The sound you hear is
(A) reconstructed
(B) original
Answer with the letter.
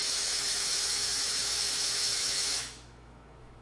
A